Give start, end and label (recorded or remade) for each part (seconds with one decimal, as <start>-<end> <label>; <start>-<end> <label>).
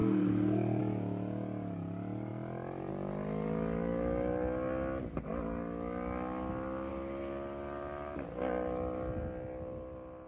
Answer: 0.0-0.8 remade; 0.8-10.3 recorded